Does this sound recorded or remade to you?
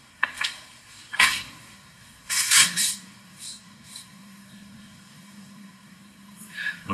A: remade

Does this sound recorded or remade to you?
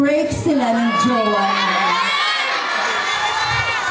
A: recorded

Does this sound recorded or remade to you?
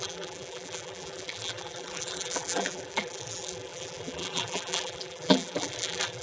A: remade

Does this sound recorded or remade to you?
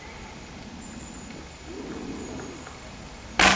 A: recorded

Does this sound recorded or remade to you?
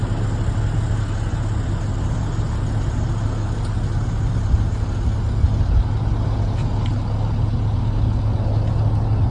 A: recorded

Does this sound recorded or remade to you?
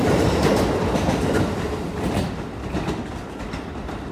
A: recorded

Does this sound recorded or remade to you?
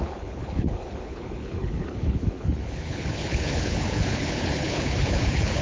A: remade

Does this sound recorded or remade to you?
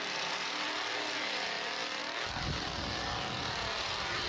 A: recorded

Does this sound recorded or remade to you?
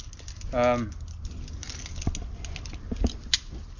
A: recorded